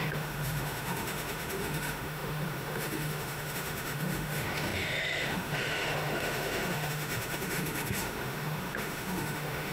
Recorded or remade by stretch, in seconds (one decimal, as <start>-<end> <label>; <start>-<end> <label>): 0.0-9.7 remade